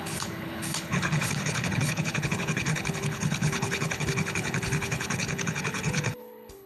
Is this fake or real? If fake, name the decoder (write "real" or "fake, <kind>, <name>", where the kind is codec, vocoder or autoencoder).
fake, codec, HILCodec